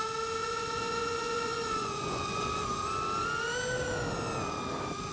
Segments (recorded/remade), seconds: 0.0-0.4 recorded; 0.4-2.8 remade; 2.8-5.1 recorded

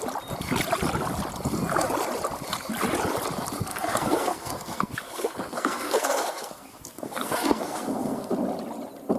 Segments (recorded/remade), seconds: 0.0-3.7 recorded; 3.7-8.3 remade; 8.3-9.2 recorded

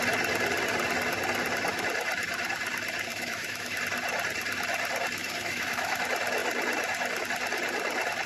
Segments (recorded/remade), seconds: 0.0-3.1 recorded; 3.1-3.8 remade; 3.8-5.2 recorded; 5.2-6.0 remade; 6.0-8.3 recorded

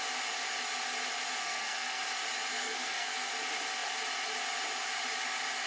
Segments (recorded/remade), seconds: 0.0-1.4 recorded; 1.4-2.0 remade; 2.0-2.5 recorded; 2.5-3.3 remade; 3.3-5.7 recorded